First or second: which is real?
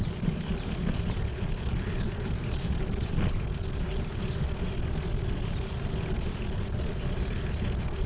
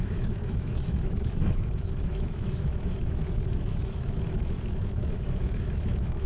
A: first